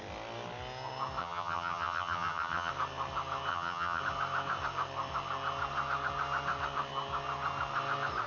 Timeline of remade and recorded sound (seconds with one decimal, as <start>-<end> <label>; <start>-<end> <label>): 0.0-1.2 recorded; 1.2-2.7 remade; 2.7-3.5 recorded; 3.5-4.0 remade; 4.0-8.3 recorded